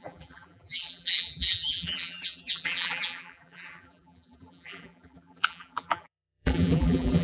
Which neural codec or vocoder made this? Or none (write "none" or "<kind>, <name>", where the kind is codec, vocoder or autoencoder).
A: vocoder, BigVGAN v2